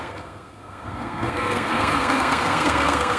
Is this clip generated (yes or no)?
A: yes